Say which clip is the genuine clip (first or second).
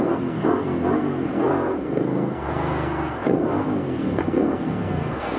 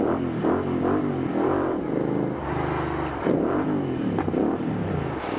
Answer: second